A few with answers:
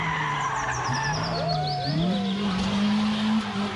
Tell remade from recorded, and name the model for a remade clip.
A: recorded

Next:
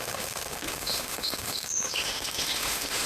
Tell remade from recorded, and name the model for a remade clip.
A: remade, autoencoder, DAC-VAE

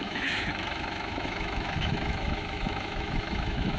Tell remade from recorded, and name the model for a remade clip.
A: remade, autoencoder, DAC-VAE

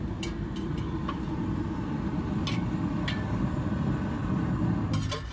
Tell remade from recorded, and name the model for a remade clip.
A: recorded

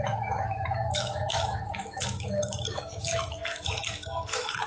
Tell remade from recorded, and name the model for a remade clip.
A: remade, autoencoder, DAC-VAE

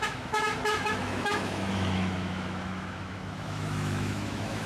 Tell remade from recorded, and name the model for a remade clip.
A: remade, autoencoder, DAC-VAE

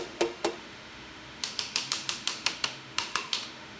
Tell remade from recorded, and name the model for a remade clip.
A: remade, autoencoder, DAC-VAE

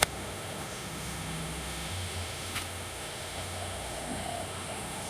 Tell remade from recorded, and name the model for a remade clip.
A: remade, autoencoder, DAC-VAE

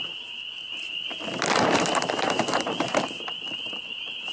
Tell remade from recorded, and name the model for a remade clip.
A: recorded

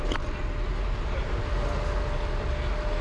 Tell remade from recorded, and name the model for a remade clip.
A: recorded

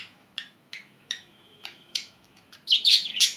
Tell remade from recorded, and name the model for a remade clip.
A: remade, autoencoder, DAC-VAE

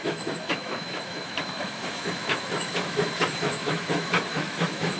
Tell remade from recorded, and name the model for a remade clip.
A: remade, autoencoder, DAC-VAE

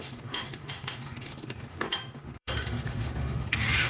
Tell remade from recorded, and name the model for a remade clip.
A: remade, autoencoder, DAC-VAE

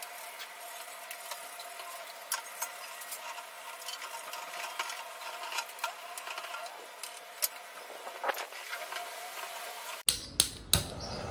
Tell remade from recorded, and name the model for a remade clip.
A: recorded